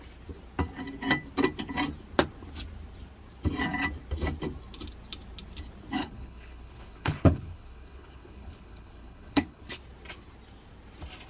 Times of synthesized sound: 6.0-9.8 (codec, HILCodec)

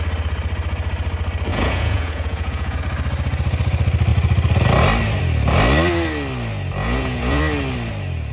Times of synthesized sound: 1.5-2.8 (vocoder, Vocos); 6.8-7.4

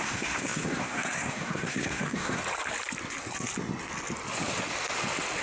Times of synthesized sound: 0.0-2.4 (codec, SNAC)